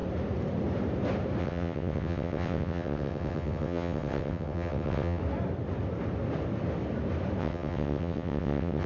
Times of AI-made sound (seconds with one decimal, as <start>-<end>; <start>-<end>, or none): 1.4-5.2; 7.4-8.9